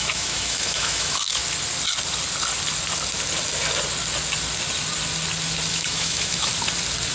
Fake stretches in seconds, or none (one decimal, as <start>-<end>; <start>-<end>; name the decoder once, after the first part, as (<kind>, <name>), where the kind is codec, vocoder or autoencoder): 0.0-1.4 (autoencoder, DAC-VAE); 5.7-6.5

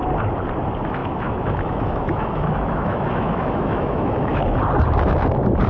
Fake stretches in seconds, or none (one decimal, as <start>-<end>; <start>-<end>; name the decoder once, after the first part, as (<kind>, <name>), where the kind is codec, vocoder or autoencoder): 1.0-4.4 (autoencoder, DAC-VAE)

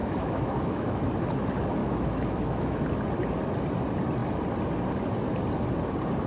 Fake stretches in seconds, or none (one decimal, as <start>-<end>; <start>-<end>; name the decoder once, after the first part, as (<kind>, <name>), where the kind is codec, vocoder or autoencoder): 0.0-1.1 (autoencoder, DAC-VAE); 1.8-2.8

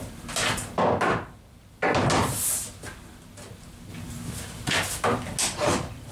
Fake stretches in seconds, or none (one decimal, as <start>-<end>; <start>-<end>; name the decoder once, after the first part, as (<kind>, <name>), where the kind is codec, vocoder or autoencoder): none